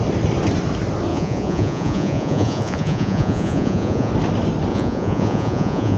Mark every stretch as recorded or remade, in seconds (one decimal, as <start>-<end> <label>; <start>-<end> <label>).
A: 0.0-1.1 recorded; 1.1-4.1 remade; 4.1-4.7 recorded; 4.7-6.0 remade